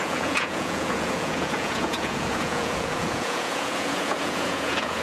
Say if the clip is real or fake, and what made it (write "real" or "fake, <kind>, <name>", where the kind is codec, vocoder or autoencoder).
fake, vocoder, Vocos